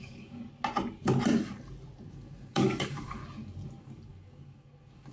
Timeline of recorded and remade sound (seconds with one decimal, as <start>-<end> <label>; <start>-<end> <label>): 0.0-0.4 remade; 0.4-2.1 recorded; 2.1-3.2 remade; 3.2-3.8 recorded; 3.8-5.1 remade